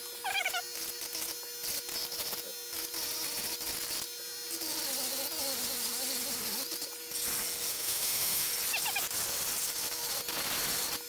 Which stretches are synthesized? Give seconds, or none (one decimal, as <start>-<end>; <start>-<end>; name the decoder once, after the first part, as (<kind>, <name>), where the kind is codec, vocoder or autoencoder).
7.7-8.5 (autoencoder, DAC-VAE)